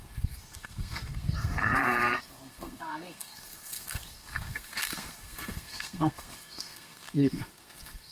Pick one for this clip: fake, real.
fake